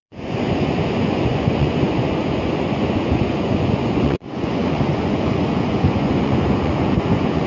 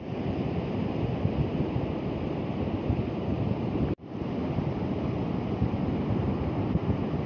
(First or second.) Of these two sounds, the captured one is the second